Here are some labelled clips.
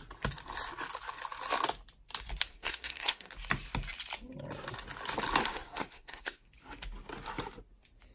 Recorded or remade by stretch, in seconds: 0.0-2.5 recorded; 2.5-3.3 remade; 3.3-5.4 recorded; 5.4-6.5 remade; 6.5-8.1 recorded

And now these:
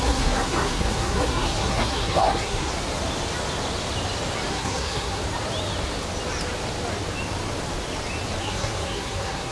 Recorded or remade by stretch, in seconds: 0.0-2.7 remade; 2.7-4.5 recorded; 4.5-5.2 remade; 5.2-8.4 recorded; 8.4-9.5 remade

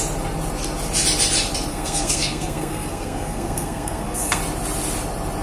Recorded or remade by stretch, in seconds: 0.0-1.7 recorded; 1.7-4.4 remade; 4.4-5.4 recorded

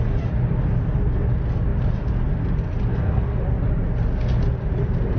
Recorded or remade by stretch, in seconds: 0.0-2.9 recorded; 2.9-3.4 remade; 3.4-5.2 recorded